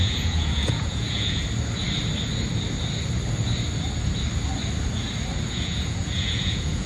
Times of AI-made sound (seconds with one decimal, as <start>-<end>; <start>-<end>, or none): 0.0-1.4; 5.5-6.9